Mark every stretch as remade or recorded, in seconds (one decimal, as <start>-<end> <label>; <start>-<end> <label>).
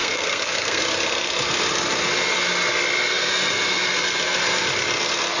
0.0-0.8 remade; 0.8-5.4 recorded